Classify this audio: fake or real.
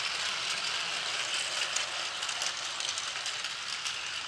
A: real